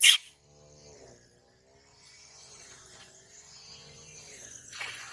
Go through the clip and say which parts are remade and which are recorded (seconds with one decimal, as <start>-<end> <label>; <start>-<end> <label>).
0.0-1.9 recorded; 1.9-5.1 remade